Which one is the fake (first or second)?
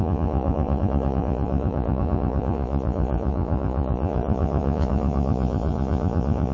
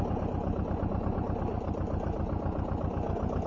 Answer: first